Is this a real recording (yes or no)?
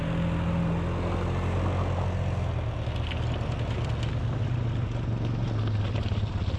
yes